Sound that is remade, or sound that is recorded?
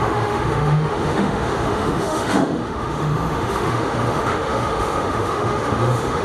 remade